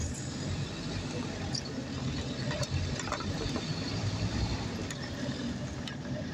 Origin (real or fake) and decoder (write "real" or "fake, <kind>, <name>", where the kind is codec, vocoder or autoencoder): fake, vocoder, BigVGAN v2